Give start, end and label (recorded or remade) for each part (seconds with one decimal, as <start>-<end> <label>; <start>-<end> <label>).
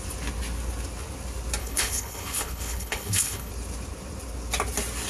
0.0-1.6 recorded; 1.6-3.5 remade; 3.5-5.1 recorded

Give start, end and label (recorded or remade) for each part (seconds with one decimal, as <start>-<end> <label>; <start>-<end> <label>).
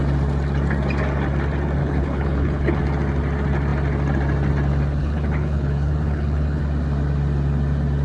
0.0-1.8 recorded; 1.8-2.8 remade; 2.8-5.0 recorded; 5.0-6.6 remade; 6.6-8.0 recorded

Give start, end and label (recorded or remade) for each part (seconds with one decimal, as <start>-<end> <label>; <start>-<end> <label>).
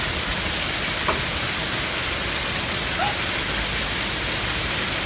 0.0-5.1 recorded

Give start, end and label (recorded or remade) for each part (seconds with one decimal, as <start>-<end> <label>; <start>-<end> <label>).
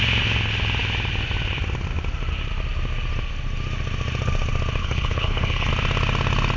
0.0-4.8 recorded; 4.8-5.7 remade; 5.7-6.6 recorded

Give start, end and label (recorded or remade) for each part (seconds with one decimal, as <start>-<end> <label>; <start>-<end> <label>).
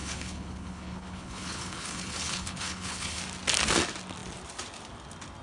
0.0-3.2 remade; 3.2-5.4 recorded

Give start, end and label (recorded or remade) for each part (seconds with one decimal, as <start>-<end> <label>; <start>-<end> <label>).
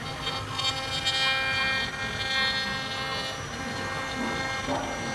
0.0-5.1 recorded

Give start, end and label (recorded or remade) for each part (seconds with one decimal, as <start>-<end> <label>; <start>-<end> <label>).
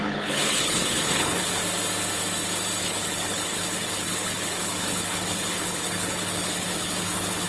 0.0-1.6 remade; 1.6-2.8 recorded; 2.8-7.5 remade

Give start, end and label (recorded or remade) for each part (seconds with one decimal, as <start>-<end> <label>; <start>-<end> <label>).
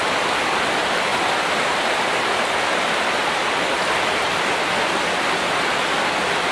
0.0-6.5 recorded